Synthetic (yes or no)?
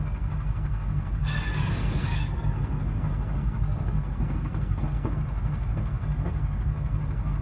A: yes